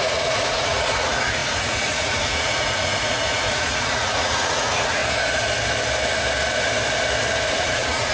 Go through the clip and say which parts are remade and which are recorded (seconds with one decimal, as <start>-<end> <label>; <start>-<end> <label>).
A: 0.0-5.0 remade; 5.0-7.5 recorded; 7.5-8.1 remade